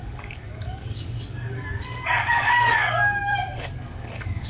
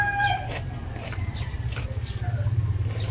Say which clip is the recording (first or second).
second